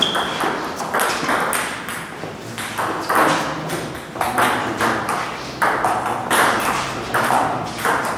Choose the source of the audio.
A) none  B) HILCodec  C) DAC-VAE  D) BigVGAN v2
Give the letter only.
A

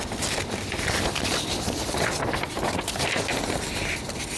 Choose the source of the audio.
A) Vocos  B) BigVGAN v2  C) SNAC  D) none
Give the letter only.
D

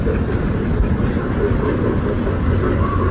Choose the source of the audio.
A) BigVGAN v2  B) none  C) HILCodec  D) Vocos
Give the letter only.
B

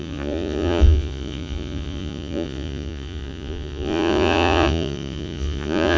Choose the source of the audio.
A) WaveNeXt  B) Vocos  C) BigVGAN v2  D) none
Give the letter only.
B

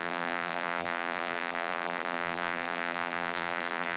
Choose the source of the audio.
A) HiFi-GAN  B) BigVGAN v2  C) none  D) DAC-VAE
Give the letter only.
B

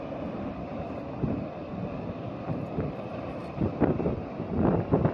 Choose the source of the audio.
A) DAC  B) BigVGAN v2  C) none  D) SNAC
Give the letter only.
B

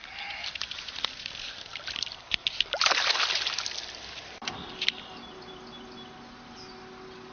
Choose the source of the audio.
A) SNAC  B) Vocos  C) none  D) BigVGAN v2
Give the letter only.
C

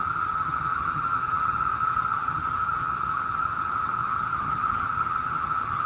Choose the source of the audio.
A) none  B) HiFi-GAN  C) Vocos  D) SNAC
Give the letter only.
B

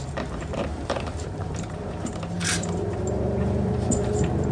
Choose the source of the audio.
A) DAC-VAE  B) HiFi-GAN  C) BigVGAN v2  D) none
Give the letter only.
C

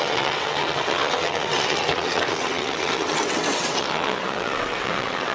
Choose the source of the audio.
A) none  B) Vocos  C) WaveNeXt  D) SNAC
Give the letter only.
C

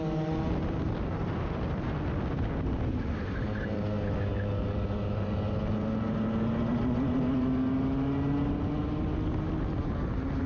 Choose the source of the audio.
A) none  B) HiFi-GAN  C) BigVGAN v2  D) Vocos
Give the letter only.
A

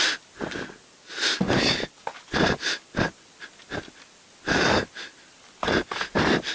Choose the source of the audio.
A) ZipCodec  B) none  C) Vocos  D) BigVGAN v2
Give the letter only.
B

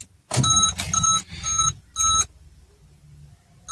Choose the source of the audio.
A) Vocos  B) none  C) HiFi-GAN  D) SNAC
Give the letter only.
B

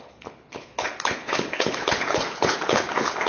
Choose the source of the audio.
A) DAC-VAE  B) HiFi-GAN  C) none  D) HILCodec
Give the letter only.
D